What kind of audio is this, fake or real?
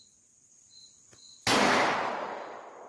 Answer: real